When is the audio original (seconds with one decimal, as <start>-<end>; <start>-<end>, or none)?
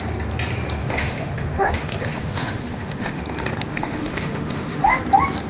0.0-0.8; 3.2-3.7; 5.0-5.5